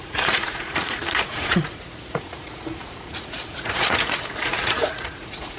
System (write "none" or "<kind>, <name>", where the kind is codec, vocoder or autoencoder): vocoder, Vocos